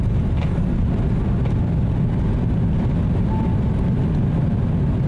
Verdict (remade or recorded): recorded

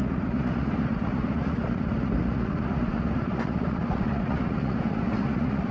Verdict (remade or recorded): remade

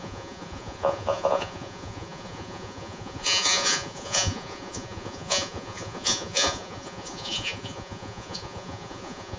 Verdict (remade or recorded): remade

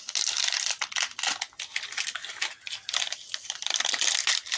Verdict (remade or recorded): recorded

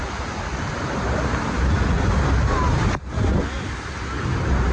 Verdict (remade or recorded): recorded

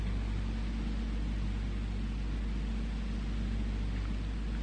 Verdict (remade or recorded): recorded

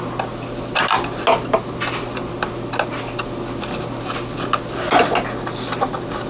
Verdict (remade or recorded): recorded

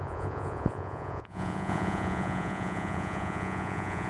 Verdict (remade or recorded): remade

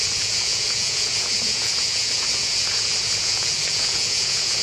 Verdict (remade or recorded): remade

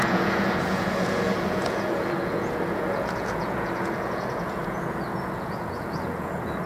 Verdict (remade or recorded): remade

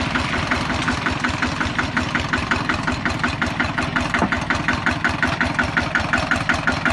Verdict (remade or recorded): recorded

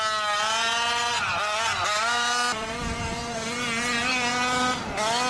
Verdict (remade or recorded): recorded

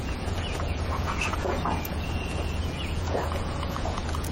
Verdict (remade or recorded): remade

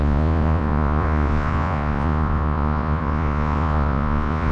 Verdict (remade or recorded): remade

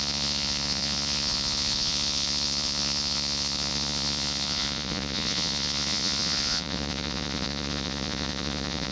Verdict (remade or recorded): remade